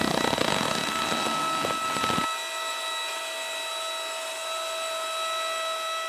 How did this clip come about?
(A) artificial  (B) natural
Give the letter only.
B